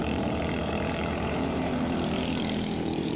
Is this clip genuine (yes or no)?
no